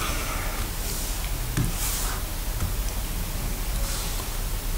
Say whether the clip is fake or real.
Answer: real